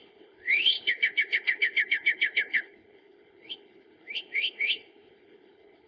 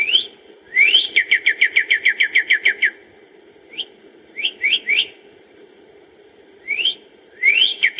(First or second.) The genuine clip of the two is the second